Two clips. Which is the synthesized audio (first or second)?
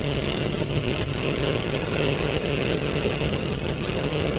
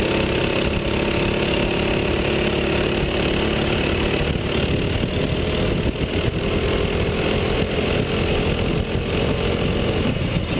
first